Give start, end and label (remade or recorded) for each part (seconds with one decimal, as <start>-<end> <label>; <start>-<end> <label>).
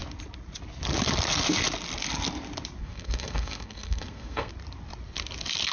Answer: 0.0-2.8 recorded; 2.8-4.5 remade; 4.5-5.7 recorded